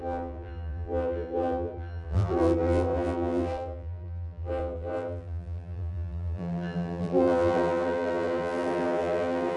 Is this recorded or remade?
remade